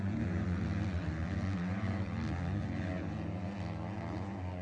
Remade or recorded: recorded